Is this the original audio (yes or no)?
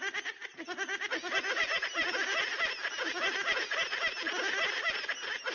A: yes